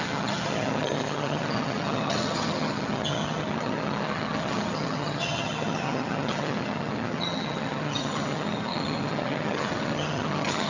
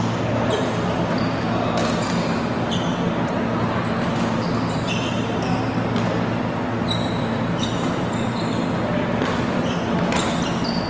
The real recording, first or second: second